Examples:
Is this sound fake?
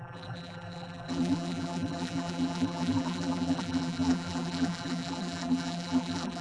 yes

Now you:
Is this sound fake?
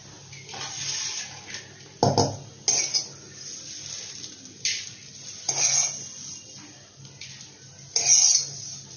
no